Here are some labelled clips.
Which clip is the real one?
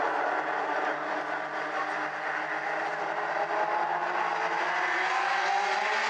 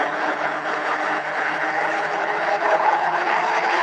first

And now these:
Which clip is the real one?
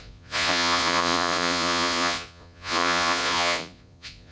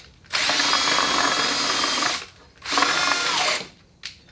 second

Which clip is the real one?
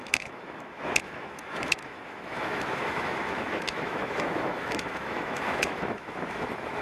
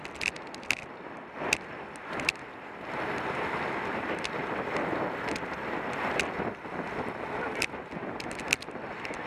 second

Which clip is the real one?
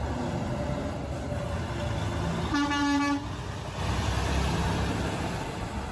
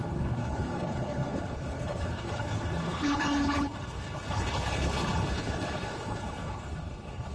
first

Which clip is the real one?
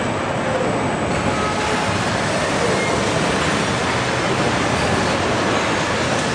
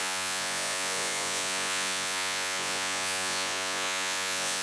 first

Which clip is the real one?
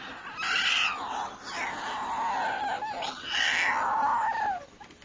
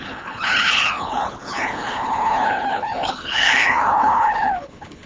first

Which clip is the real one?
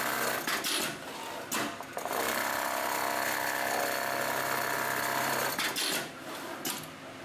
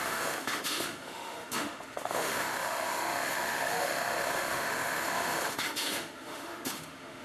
first